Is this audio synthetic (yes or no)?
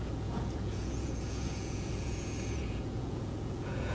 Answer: yes